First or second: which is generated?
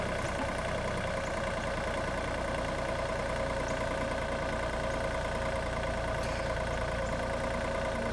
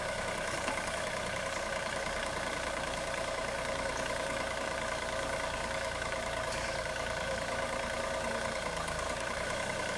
second